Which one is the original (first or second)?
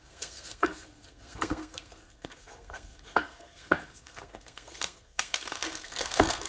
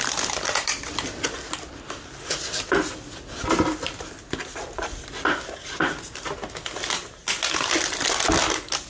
second